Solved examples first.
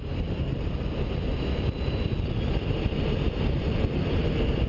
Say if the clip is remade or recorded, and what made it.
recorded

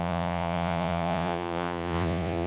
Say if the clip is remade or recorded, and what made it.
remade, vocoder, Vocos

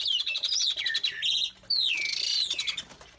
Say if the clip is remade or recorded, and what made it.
recorded